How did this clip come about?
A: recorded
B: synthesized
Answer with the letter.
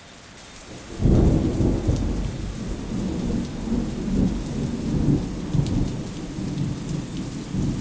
A